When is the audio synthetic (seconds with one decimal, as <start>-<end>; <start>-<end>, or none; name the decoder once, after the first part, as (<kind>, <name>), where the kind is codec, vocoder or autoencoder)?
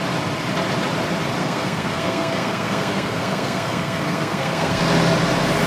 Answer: 1.4-4.8 (codec, SNAC)